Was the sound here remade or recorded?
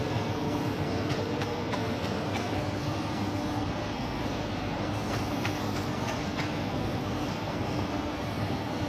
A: remade